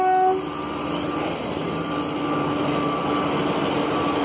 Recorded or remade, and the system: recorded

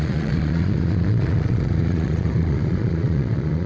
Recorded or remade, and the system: remade, vocoder, Vocos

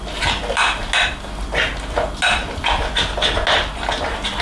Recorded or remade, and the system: recorded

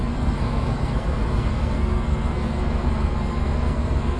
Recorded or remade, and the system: remade, codec, SNAC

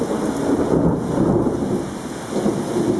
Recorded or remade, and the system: recorded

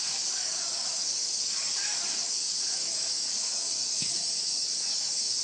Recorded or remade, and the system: remade, codec, DAC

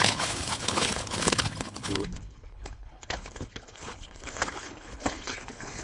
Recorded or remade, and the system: remade, codec, HILCodec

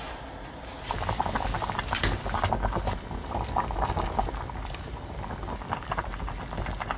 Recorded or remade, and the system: recorded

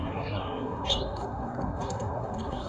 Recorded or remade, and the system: remade, codec, SNAC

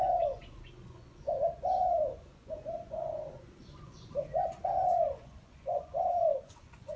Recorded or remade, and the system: remade, vocoder, Vocos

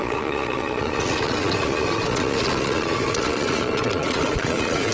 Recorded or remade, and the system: remade, vocoder, Vocos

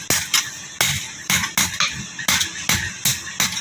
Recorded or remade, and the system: recorded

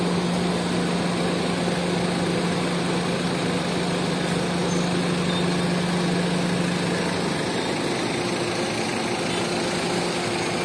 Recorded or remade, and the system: recorded